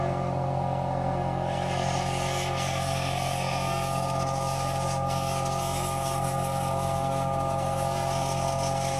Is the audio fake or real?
fake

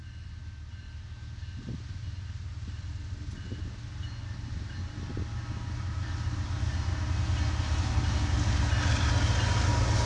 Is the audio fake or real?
real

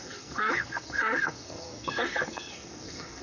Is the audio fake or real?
fake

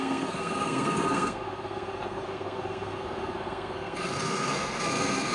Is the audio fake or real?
fake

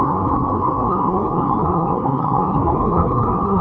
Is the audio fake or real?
fake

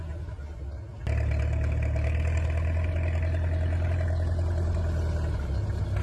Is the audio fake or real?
real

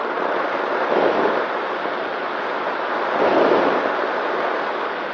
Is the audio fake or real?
real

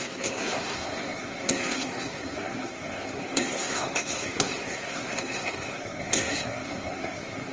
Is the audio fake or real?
fake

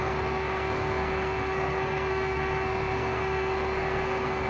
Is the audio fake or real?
fake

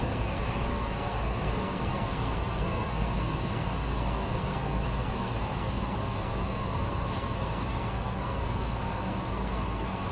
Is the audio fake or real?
fake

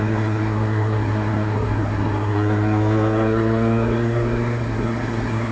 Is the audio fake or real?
fake